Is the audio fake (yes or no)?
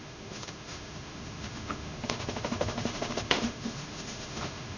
yes